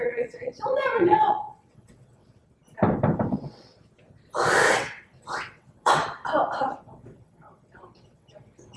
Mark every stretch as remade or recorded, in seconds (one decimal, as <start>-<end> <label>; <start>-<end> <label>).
0.0-2.4 remade; 2.4-3.3 recorded; 3.3-3.7 remade; 3.7-4.7 recorded; 4.7-6.0 remade; 6.0-6.6 recorded; 6.6-8.8 remade